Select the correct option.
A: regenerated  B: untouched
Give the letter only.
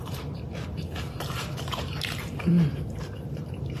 A